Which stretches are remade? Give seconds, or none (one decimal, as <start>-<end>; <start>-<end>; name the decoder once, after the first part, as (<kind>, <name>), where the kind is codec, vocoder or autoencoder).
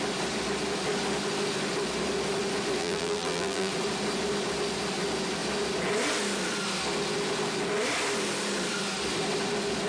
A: 2.8-3.7 (vocoder, BigVGAN v2)